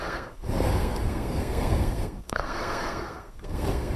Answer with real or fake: fake